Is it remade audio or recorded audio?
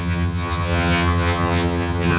remade